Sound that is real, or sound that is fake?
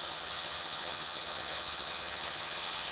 fake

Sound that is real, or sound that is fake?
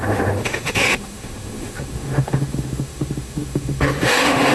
fake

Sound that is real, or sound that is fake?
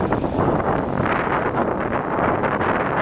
real